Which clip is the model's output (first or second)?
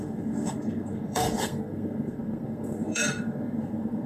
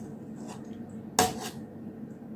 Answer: first